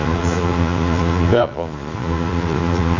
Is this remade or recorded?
remade